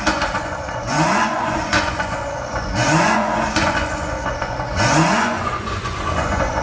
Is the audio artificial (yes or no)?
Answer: yes